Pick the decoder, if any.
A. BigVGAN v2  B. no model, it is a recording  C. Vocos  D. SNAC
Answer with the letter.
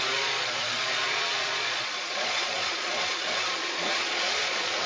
C